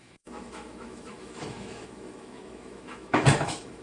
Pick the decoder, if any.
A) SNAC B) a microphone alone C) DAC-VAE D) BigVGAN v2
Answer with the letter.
C